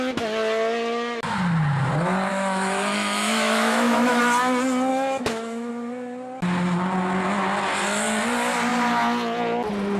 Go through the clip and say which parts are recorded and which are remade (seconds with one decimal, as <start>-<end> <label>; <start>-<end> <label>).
0.0-2.3 recorded; 2.3-4.2 remade; 4.2-4.9 recorded; 4.9-5.7 remade; 5.7-10.0 recorded